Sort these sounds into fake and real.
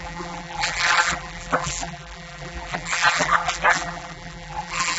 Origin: fake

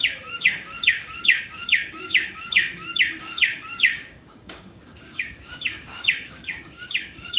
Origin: fake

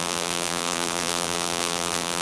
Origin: fake